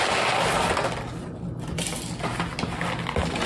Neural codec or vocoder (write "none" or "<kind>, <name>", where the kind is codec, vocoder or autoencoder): none